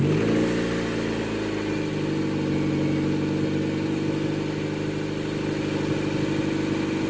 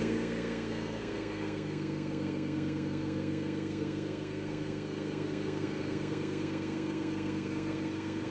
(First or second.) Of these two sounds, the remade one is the second